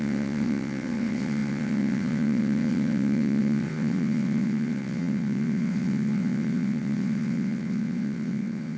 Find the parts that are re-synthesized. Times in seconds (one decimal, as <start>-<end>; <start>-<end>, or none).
0.0-8.8